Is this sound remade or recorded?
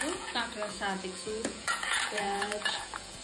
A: remade